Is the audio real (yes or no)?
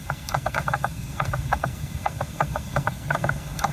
no